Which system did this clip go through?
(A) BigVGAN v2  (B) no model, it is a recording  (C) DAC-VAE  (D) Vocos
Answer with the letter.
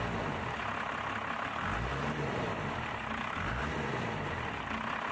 B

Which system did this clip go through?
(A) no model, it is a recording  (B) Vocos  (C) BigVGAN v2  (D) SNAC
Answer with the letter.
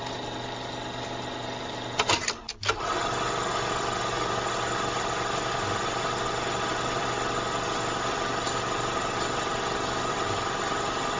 A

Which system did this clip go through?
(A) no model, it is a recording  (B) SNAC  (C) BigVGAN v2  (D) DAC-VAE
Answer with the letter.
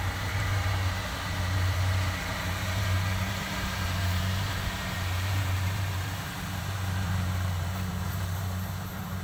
C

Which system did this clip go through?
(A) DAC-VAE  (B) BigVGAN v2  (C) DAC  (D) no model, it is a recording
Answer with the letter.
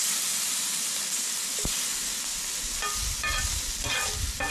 B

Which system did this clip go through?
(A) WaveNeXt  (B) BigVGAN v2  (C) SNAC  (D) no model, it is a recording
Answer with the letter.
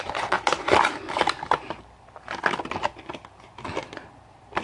D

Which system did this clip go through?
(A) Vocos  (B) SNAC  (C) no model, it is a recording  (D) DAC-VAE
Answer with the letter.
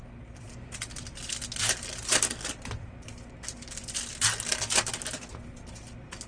C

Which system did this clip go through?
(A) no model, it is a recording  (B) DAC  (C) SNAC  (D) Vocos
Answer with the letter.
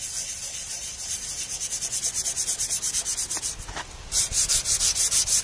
A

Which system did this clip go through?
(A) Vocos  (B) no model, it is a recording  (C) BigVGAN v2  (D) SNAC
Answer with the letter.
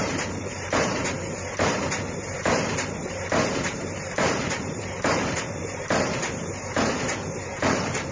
C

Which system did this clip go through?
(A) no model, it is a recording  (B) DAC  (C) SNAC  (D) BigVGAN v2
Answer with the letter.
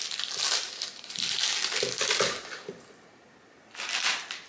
A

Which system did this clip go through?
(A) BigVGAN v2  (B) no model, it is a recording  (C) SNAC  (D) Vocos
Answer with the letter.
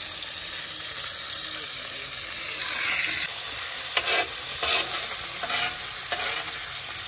B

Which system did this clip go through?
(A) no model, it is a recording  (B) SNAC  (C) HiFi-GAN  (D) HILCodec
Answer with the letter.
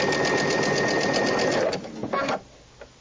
A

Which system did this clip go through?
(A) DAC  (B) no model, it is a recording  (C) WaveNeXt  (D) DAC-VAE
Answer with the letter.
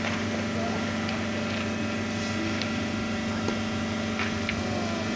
B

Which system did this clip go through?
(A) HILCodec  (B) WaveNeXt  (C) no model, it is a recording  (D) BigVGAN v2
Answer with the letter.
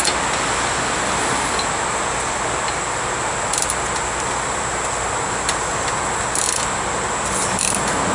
C